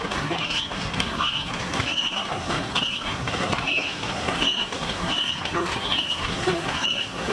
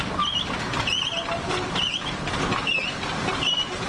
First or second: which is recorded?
second